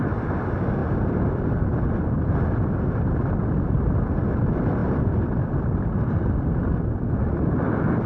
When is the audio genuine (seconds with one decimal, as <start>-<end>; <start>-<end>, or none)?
0.0-0.8; 1.6-4.8; 6.9-8.1